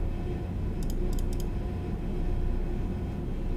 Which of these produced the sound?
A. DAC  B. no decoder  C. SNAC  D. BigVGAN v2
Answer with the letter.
B